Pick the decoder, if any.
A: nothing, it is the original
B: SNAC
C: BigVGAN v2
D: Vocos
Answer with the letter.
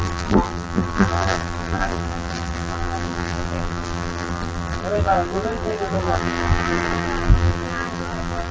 C